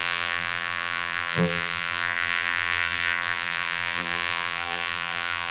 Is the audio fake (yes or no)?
yes